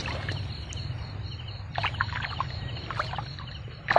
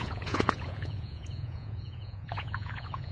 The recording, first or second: first